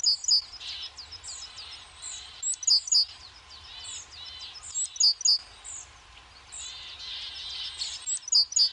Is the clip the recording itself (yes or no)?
yes